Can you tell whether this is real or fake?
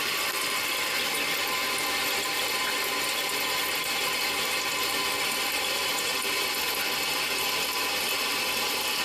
real